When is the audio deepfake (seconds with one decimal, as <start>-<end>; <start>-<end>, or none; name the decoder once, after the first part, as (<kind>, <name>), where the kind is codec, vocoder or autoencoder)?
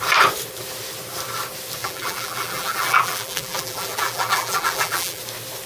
1.8-5.2 (vocoder, BigVGAN v2)